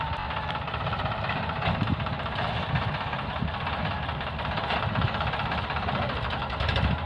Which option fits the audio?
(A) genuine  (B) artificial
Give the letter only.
B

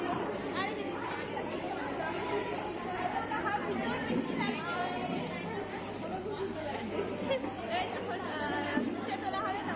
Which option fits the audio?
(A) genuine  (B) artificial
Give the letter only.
B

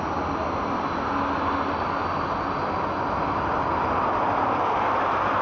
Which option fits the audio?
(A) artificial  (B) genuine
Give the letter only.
B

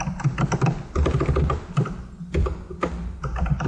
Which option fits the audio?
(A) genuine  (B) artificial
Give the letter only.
A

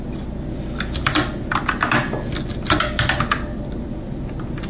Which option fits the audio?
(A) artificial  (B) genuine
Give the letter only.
B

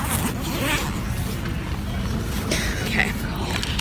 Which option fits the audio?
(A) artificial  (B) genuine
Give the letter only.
B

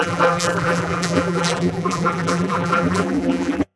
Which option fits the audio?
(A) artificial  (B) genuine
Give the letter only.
A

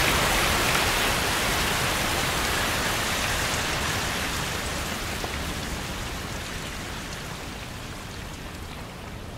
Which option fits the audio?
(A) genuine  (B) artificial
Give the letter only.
B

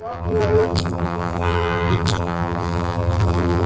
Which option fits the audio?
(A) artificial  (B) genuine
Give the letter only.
A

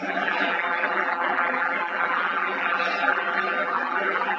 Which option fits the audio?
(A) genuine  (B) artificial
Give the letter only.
B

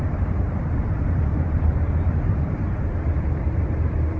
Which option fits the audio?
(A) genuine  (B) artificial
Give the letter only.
B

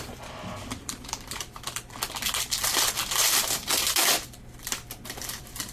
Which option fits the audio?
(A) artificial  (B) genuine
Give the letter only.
A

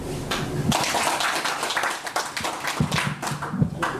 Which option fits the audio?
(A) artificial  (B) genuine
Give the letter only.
B